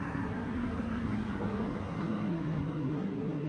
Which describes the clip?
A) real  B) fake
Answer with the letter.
B